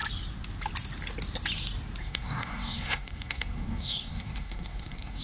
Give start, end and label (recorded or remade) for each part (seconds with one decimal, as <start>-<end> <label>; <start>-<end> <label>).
0.0-2.0 recorded; 2.0-5.2 remade